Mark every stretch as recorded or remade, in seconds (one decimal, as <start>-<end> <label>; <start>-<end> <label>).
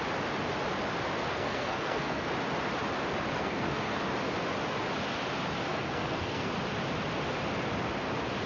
0.0-1.3 recorded; 1.3-2.3 remade; 2.3-3.3 recorded; 3.3-4.0 remade; 4.0-5.7 recorded; 5.7-6.5 remade; 6.5-8.5 recorded